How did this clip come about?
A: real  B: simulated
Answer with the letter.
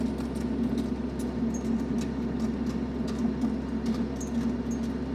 A